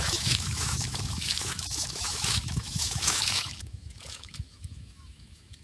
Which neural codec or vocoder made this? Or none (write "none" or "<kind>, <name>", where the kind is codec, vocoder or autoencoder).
autoencoder, DAC-VAE